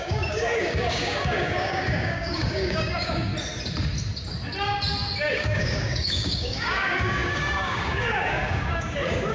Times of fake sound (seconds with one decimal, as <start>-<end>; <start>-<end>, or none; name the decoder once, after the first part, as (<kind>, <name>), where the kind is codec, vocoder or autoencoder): 0.0-3.3 (codec, DAC); 5.3-9.3